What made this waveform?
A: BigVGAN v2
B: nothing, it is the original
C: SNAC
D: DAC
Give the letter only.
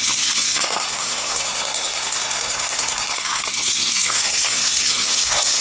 C